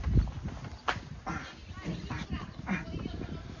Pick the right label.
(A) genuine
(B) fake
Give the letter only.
A